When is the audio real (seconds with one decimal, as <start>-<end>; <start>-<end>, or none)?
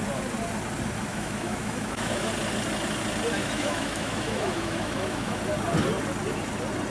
0.0-1.1; 2.3-3.4; 5.4-6.9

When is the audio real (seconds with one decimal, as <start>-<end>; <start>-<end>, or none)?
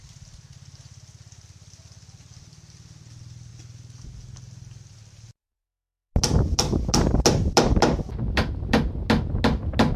0.0-10.0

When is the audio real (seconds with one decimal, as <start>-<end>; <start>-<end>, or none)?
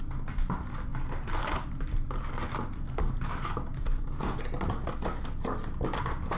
0.0-6.4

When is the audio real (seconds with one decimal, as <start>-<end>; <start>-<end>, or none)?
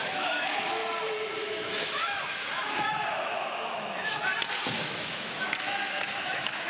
0.8-1.4; 4.3-4.8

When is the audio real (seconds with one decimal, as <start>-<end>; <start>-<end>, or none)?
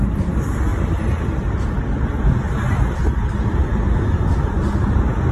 0.0-5.3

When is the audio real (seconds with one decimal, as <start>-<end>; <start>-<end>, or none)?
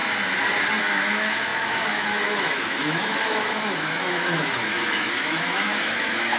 0.0-0.8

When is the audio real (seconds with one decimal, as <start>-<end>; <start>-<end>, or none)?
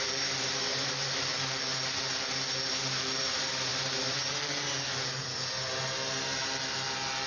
0.0-7.3